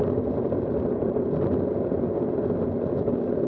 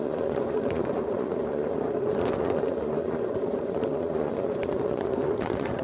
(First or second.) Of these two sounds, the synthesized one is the second